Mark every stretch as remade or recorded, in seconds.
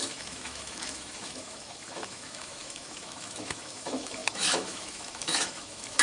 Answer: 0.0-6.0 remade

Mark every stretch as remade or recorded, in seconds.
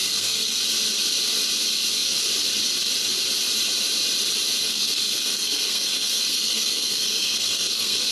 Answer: 0.0-0.6 remade; 0.6-4.7 recorded; 4.7-8.1 remade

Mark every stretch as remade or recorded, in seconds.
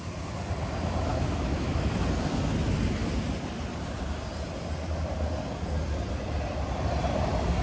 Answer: 0.0-1.1 recorded; 1.1-1.9 remade; 1.9-7.6 recorded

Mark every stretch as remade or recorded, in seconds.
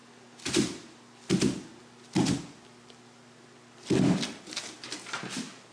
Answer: 0.0-5.7 recorded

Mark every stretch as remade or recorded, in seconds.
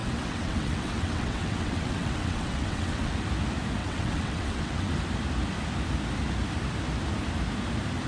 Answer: 0.0-3.1 remade; 3.1-3.8 recorded; 3.8-4.9 remade; 4.9-8.1 recorded